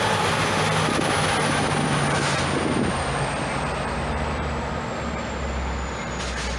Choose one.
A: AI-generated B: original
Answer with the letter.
B